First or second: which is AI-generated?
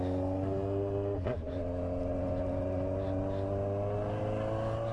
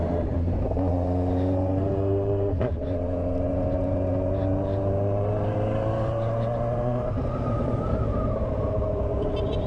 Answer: second